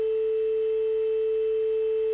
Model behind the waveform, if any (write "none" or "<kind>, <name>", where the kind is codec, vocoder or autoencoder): none